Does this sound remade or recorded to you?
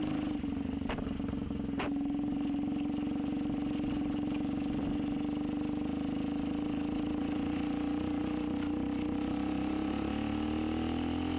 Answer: recorded